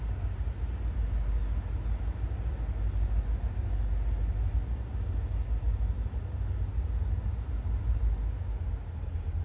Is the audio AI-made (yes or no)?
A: no